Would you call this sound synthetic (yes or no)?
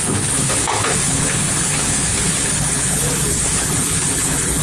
yes